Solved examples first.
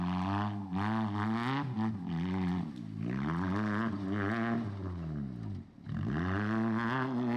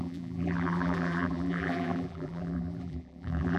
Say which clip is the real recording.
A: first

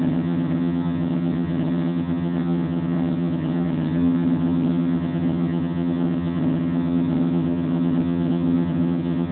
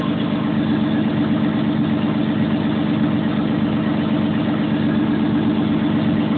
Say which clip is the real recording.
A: second